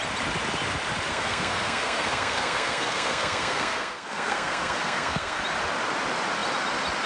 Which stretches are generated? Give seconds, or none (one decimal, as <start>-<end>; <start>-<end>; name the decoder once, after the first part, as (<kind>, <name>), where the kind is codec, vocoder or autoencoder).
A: 1.1-5.4 (codec, SNAC)